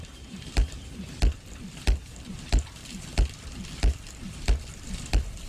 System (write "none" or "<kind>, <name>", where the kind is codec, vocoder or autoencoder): none